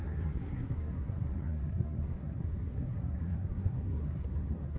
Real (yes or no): no